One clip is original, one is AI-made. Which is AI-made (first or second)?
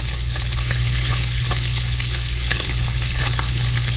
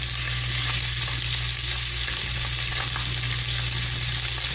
first